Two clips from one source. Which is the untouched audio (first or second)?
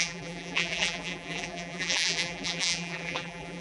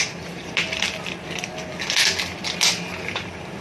second